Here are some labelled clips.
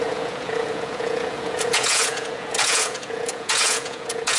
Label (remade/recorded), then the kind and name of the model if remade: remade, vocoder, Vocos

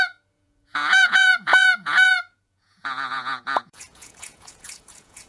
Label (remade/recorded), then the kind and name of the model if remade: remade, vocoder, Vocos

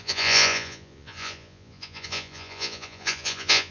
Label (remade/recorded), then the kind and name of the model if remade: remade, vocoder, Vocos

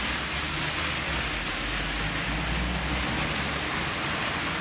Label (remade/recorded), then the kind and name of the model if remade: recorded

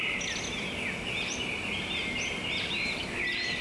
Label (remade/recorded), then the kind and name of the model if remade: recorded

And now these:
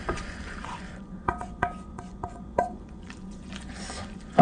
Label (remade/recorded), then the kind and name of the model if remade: remade, vocoder, Vocos